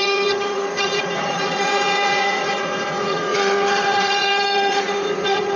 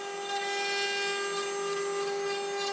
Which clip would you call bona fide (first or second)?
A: second